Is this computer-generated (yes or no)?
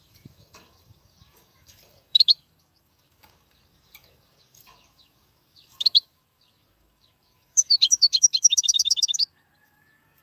yes